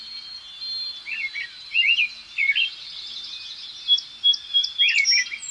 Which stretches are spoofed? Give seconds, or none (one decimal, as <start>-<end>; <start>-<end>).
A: none